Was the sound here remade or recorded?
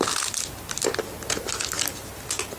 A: recorded